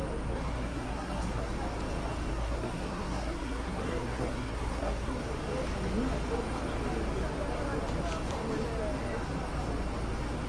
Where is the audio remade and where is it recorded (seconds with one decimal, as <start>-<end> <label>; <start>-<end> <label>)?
0.0-0.5 recorded; 0.5-1.5 remade; 1.5-2.3 recorded; 2.3-5.2 remade; 5.2-10.5 recorded